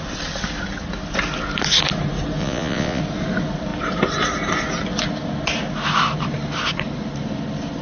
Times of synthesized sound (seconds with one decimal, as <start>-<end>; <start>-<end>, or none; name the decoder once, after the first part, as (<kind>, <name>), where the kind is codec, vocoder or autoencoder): 2.4-3.0 (vocoder, Vocos)